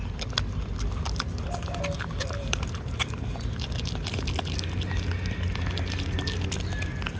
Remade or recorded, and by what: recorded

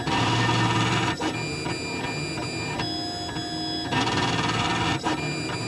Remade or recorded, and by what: recorded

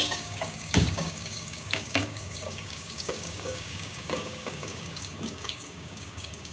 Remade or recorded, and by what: remade, codec, DAC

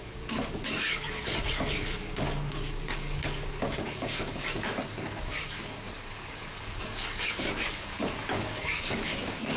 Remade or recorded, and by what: remade, codec, DAC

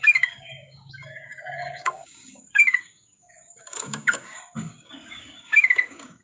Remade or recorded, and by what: remade, codec, DAC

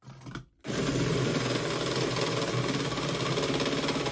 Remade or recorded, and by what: recorded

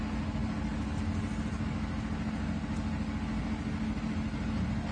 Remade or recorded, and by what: recorded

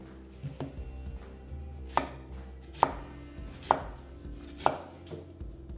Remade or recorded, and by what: recorded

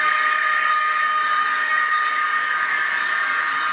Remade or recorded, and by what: remade, codec, DAC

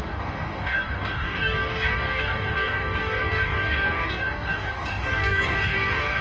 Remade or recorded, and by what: remade, codec, DAC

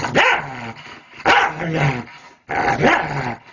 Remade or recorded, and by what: recorded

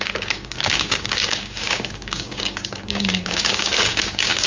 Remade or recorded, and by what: remade, codec, DAC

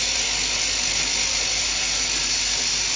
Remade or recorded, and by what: recorded